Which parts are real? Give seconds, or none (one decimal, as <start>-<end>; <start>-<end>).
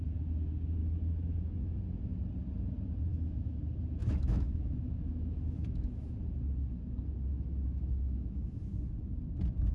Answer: 0.0-0.8; 1.8-3.1; 3.6-4.0; 6.1-7.3; 8.8-9.7